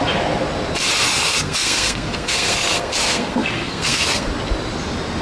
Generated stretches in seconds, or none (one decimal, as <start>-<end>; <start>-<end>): 1.2-4.3